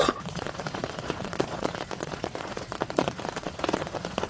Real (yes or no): no